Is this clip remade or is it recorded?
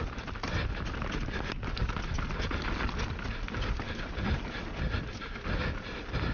recorded